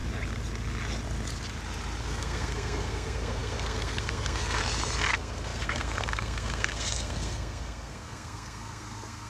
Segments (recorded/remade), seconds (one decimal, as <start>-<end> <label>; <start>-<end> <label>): 0.0-2.0 recorded; 2.0-4.6 remade; 4.6-5.1 recorded; 5.1-9.3 remade